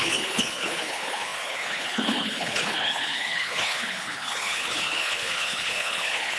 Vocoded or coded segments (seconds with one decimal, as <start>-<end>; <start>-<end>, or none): 0.0-6.4